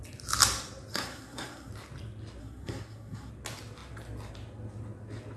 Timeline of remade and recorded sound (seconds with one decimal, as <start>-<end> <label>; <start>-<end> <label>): 0.0-0.9 recorded; 0.9-1.7 remade; 1.7-2.4 recorded; 2.4-3.3 remade; 3.3-5.4 recorded